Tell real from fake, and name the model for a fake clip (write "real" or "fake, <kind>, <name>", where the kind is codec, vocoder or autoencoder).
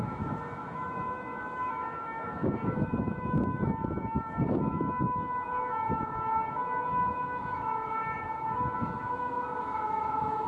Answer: fake, autoencoder, DAC-VAE